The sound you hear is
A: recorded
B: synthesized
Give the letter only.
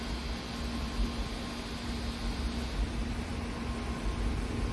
A